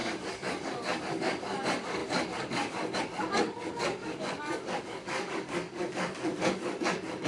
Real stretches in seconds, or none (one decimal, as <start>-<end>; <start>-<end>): none